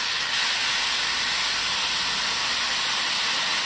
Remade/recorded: recorded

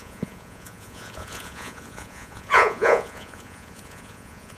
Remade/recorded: remade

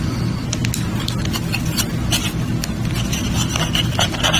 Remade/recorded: recorded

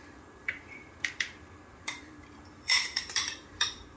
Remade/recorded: remade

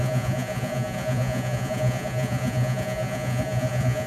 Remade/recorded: remade